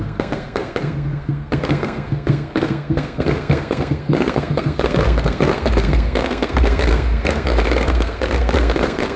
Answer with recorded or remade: remade